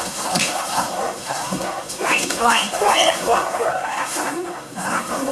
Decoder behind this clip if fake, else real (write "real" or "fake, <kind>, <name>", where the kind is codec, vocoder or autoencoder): fake, codec, SNAC